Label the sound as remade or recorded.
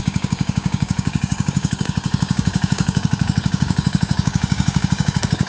remade